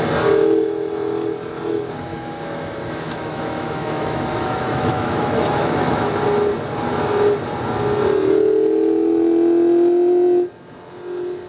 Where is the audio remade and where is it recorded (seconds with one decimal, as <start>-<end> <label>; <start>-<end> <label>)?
0.0-2.1 recorded; 2.1-6.1 remade; 6.1-11.5 recorded